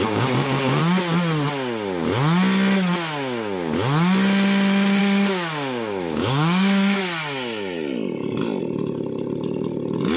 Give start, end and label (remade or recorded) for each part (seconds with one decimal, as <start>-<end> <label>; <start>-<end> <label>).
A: 0.0-0.8 remade; 0.8-5.0 recorded; 5.0-7.0 remade; 7.0-10.2 recorded

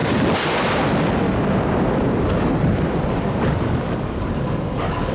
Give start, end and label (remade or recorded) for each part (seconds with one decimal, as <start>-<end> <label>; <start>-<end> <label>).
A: 0.0-3.1 recorded; 3.1-5.1 remade

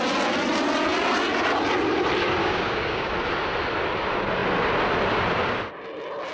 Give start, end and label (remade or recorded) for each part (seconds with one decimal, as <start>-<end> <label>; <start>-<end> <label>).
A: 0.0-2.4 recorded; 2.4-3.1 remade; 3.1-6.3 recorded